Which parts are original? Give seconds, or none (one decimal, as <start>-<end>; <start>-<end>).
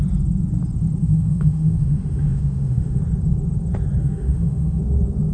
0.0-1.0; 3.0-4.0; 4.8-5.3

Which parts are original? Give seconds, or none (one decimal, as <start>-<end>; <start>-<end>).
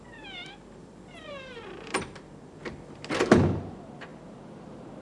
0.0-0.8; 2.0-5.0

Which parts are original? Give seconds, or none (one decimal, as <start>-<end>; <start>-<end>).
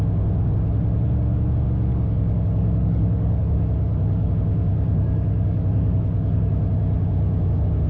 0.0-1.9; 4.3-4.7; 6.5-7.9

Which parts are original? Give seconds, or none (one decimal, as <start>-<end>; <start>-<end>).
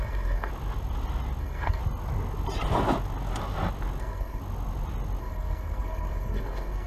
0.5-1.4; 1.8-4.0; 4.4-5.2